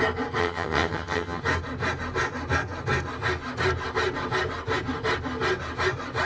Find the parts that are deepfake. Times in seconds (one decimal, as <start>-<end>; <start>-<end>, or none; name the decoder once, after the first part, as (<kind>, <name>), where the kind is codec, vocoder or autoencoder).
0.4-1.4 (vocoder, HiFi-GAN)

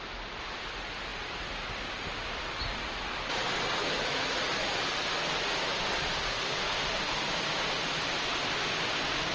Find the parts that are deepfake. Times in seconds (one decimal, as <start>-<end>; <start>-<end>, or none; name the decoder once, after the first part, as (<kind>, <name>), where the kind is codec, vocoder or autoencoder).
none